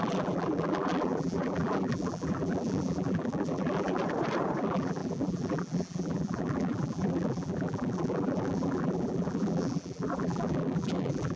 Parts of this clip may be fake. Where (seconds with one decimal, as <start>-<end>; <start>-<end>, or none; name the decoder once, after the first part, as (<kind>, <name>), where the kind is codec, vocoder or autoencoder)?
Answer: 0.0-4.0 (vocoder, BigVGAN v2); 4.6-11.4